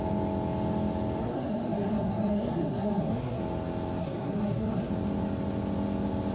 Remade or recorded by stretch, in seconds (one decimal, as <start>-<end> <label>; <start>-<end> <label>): 0.0-1.2 recorded; 1.2-3.4 remade; 3.4-4.0 recorded; 4.0-4.9 remade; 4.9-6.3 recorded